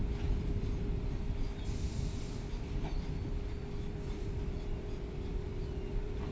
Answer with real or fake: fake